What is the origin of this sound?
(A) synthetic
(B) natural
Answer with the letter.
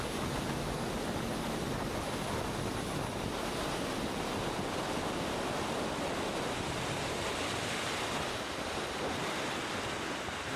B